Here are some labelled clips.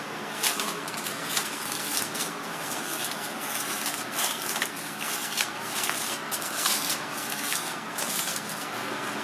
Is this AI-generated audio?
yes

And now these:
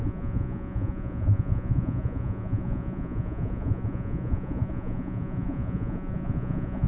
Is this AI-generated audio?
yes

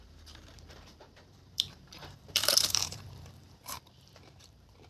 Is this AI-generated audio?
yes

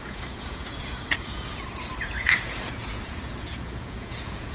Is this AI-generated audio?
yes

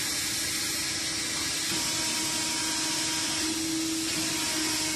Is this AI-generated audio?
no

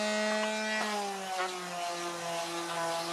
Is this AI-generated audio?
no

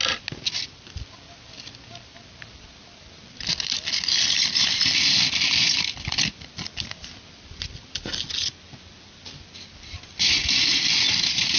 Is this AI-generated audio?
no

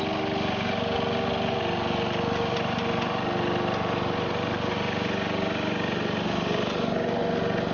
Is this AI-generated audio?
no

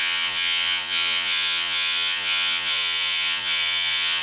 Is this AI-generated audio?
yes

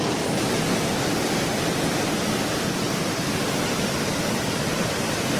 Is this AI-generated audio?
no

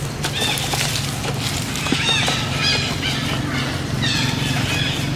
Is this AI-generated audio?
no